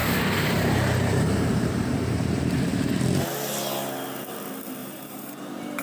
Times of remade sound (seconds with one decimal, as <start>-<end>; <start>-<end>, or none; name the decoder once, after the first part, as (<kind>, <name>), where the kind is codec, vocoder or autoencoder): 0.0-2.6 (vocoder, BigVGAN v2); 4.8-5.8